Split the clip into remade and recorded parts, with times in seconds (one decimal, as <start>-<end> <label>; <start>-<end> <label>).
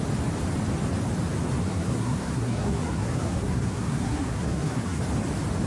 0.0-1.6 recorded; 1.6-5.0 remade; 5.0-5.7 recorded